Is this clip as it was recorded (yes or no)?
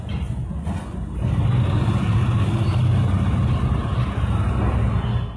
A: yes